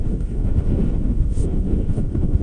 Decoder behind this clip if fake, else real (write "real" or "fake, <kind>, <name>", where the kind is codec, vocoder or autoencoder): fake, autoencoder, DAC-VAE